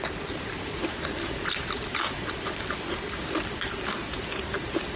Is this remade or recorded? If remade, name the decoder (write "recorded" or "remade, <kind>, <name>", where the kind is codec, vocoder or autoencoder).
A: recorded